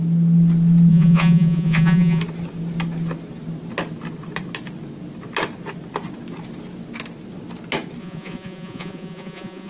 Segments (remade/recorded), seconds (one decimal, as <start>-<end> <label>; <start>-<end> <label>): 0.0-0.9 recorded; 0.9-2.2 remade; 2.2-8.0 recorded; 8.0-9.7 remade